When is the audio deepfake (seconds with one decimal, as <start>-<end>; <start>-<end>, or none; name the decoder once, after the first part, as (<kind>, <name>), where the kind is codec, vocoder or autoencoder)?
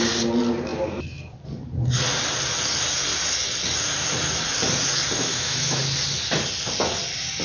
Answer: 5.2-5.8 (autoencoder, DAC-VAE)